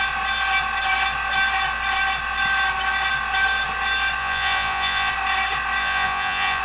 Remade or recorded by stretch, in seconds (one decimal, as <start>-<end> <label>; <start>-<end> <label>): 0.0-4.2 recorded; 4.2-5.1 remade; 5.1-5.8 recorded; 5.8-6.6 remade

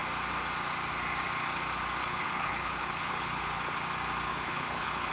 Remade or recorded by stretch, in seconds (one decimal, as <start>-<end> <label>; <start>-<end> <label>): 0.0-2.0 recorded; 2.0-3.4 remade; 3.4-4.3 recorded; 4.3-5.1 remade

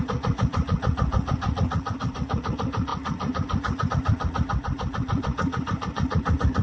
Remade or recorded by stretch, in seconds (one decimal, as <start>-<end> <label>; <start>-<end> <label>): 0.0-6.6 remade

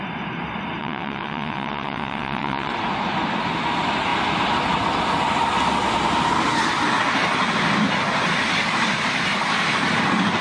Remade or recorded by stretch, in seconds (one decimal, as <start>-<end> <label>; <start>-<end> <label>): 0.0-0.8 recorded; 0.8-2.7 remade; 2.7-10.4 recorded

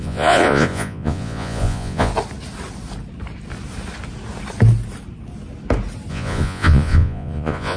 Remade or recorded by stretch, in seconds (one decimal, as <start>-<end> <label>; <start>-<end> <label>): 0.0-2.1 remade; 2.1-6.1 recorded; 6.1-7.8 remade

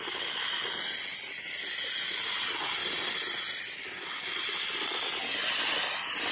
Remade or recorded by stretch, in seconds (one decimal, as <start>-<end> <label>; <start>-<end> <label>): 0.0-6.3 recorded

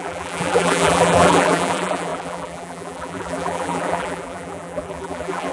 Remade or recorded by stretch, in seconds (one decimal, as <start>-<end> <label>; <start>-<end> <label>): 0.0-5.5 remade